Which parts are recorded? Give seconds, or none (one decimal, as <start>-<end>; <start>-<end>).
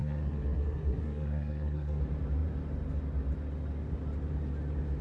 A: 2.0-5.0